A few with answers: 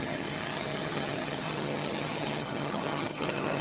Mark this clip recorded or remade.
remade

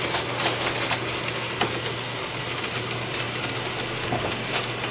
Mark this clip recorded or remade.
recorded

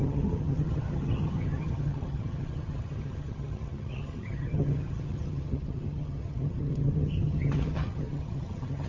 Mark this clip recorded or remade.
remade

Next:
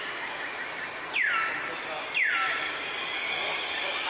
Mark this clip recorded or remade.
recorded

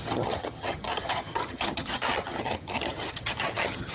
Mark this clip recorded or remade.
remade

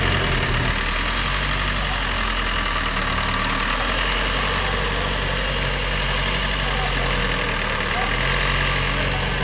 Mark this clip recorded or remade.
recorded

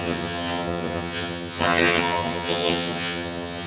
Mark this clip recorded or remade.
remade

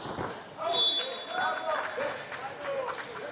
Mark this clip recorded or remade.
recorded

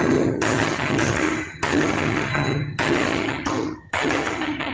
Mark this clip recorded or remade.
remade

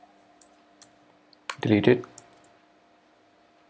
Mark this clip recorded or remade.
recorded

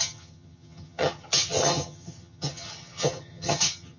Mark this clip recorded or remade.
remade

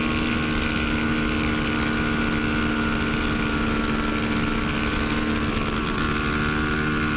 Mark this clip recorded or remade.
recorded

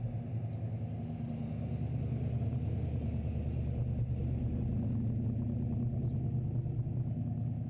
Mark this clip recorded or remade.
recorded